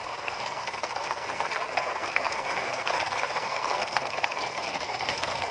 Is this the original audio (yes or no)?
no